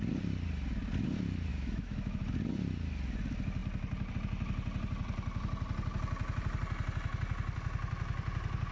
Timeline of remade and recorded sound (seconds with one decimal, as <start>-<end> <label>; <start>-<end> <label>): 0.0-1.5 recorded; 1.5-2.2 remade; 2.2-8.7 recorded